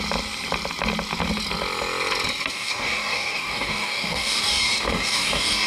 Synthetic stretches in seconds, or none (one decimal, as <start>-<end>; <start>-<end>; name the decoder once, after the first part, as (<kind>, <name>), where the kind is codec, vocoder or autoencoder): 2.5-5.7 (codec, DAC)